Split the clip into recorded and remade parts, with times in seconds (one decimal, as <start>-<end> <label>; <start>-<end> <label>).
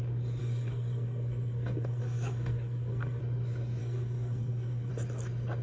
0.0-0.4 recorded; 0.4-3.2 remade; 3.2-3.8 recorded; 3.8-4.9 remade; 4.9-5.6 recorded